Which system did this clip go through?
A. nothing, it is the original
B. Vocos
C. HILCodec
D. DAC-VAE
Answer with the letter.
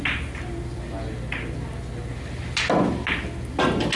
A